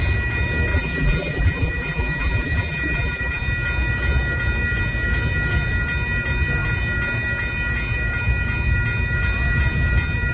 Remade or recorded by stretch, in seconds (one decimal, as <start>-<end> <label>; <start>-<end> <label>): 0.0-0.7 recorded; 0.7-3.4 remade; 3.4-10.3 recorded